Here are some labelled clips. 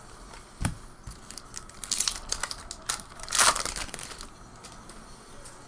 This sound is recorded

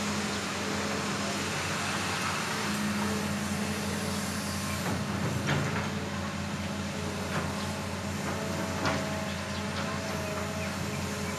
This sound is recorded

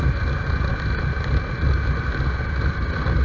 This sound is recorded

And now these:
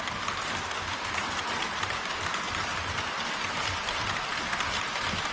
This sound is recorded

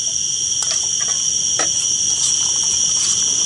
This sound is recorded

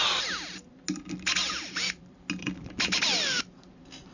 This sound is recorded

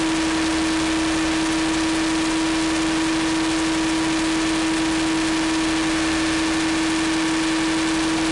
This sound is recorded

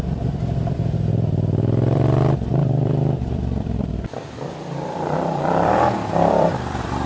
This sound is remade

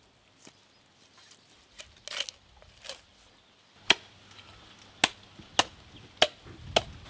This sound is recorded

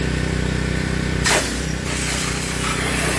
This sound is remade